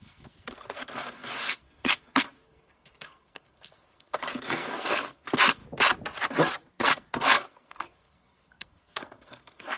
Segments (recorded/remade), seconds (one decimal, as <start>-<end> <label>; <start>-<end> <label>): 0.0-5.6 remade; 5.6-6.7 recorded; 6.7-9.8 remade